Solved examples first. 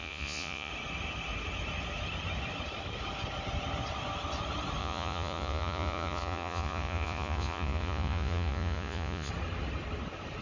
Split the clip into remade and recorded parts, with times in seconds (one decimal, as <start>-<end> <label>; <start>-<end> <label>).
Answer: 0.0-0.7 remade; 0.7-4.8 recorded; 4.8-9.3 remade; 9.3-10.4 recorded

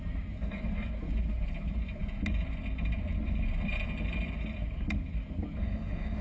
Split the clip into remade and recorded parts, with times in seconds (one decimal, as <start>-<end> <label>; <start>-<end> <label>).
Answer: 0.0-5.6 recorded; 5.6-6.2 remade

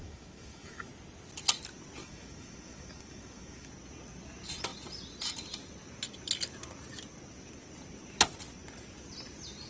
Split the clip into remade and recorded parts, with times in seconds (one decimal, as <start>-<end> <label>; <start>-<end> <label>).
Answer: 0.0-0.9 remade; 0.9-2.0 recorded; 2.0-3.7 remade; 3.7-9.7 recorded